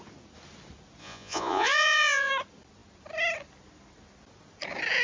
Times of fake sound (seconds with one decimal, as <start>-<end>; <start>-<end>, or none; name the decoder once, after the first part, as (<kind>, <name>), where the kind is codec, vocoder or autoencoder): 1.0-2.3 (vocoder, Vocos)